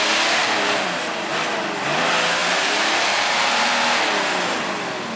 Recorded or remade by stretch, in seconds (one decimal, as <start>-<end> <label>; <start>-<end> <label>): 0.0-0.4 recorded; 0.4-1.3 remade; 1.3-2.4 recorded; 2.4-3.7 remade; 3.7-5.2 recorded